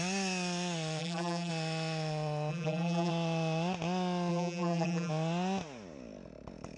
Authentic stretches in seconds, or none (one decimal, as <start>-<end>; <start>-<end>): 0.0-1.0; 1.5-2.5; 3.1-4.3; 5.1-6.8